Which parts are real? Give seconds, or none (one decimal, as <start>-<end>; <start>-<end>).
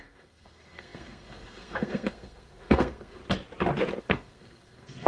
3.2-4.0